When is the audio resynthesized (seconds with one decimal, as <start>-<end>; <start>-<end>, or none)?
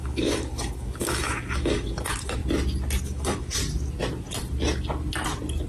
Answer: 0.0-2.4; 3.0-3.6